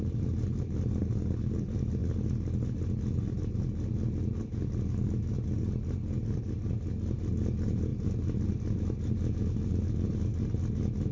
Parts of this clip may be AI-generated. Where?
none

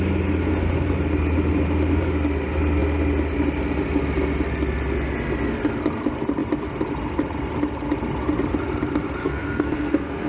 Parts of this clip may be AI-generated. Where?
9.2-10.3 (codec, SNAC)

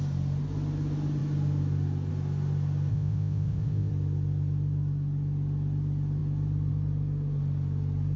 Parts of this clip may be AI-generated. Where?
2.9-3.9 (codec, ZipCodec)